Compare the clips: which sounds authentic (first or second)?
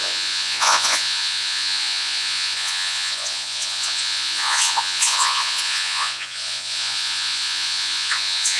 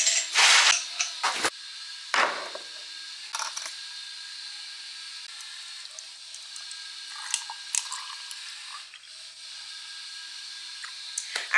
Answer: second